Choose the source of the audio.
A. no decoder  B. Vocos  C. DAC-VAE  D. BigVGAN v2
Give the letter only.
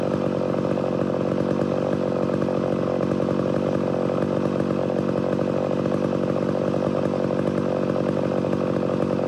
A